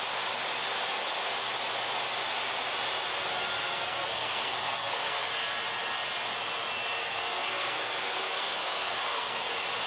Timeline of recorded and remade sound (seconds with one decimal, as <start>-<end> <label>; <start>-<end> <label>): 0.0-3.6 recorded; 3.6-5.3 remade; 5.3-7.0 recorded; 7.0-9.5 remade; 9.5-9.9 recorded